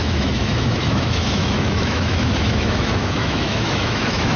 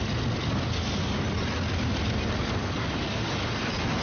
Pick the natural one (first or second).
second